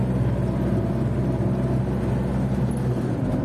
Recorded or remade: recorded